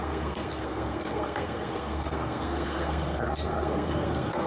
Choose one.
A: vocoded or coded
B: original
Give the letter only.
A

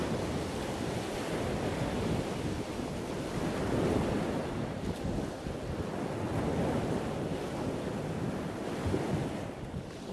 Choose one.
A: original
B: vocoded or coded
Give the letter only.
A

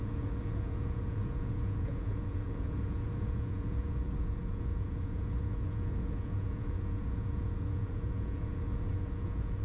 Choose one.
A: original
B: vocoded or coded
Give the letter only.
B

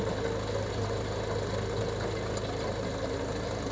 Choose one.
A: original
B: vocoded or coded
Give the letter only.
A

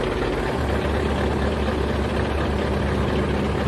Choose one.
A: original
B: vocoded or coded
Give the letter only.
A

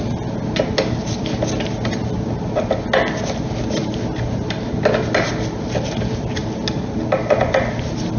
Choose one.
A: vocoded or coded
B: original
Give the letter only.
B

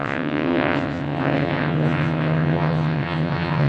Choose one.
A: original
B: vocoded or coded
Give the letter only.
B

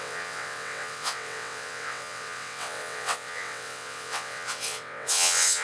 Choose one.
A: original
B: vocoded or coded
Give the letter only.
B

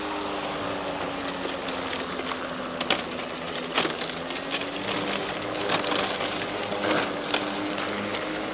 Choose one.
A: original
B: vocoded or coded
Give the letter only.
A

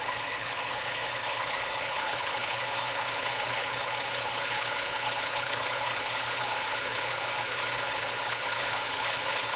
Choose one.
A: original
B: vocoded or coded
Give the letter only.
B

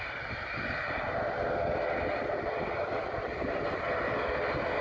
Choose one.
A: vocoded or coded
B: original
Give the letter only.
B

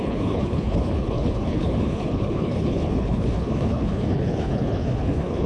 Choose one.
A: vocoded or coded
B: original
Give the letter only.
A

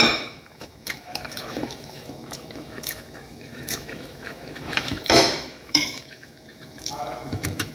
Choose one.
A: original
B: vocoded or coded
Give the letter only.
B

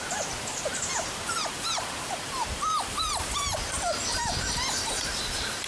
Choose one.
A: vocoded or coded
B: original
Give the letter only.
A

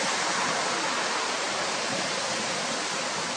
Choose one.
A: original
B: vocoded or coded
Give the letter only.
A